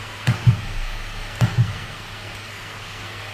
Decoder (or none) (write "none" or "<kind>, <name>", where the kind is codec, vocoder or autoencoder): codec, SNAC